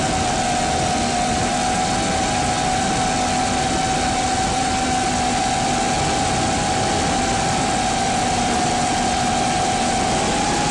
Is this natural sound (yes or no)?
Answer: yes